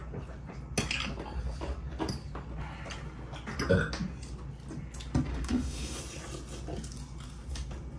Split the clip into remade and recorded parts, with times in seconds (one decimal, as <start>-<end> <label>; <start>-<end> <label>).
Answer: 0.0-5.3 recorded; 5.3-6.0 remade; 6.0-8.0 recorded